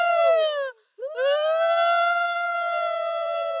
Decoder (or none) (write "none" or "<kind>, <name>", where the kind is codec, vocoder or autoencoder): none